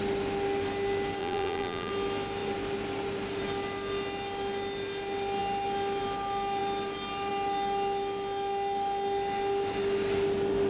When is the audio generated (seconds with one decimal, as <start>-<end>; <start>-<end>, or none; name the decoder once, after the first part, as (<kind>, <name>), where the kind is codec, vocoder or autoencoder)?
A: 1.2-1.9 (vocoder, BigVGAN v2)